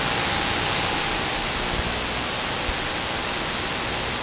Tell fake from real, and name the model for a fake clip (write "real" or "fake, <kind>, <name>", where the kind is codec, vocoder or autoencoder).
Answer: real